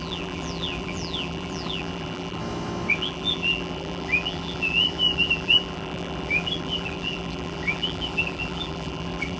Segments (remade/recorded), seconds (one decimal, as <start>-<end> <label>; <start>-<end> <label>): 0.0-2.4 remade; 2.4-2.9 recorded; 2.9-9.4 remade